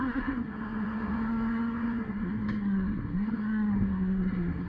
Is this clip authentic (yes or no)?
no